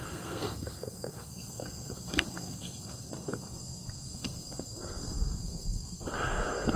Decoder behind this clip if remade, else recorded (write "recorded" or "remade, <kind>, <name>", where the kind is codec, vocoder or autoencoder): remade, codec, SNAC